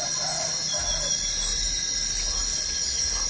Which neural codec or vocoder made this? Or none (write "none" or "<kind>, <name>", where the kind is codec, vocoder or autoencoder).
none